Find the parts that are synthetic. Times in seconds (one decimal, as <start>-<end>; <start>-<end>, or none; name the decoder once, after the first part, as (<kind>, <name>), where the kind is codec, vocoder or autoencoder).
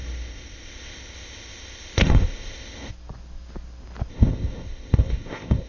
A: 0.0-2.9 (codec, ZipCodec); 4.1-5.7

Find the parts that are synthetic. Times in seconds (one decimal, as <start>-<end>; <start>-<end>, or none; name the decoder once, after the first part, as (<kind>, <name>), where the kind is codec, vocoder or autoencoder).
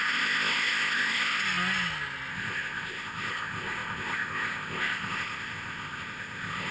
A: 0.0-1.4 (codec, ZipCodec); 2.3-6.7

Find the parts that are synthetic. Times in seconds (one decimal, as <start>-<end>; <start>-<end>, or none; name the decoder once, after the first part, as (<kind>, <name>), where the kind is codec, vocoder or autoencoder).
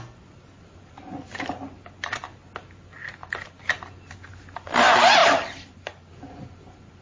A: none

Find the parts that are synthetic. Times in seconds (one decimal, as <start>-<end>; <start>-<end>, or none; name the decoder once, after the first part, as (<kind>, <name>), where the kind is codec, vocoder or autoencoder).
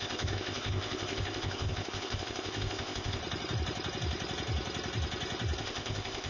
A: 0.0-3.2 (codec, ZipCodec); 5.6-6.3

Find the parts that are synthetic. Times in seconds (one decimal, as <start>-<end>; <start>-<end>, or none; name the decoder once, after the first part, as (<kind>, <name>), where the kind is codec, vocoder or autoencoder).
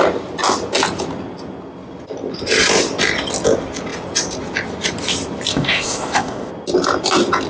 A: 5.5-6.5 (codec, ZipCodec)